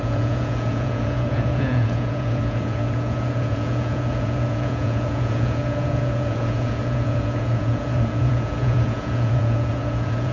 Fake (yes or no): yes